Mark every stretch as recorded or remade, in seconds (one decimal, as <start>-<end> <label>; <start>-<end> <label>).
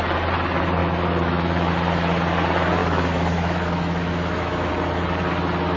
0.0-0.8 recorded; 0.8-1.7 remade; 1.7-2.8 recorded; 2.8-4.7 remade; 4.7-5.8 recorded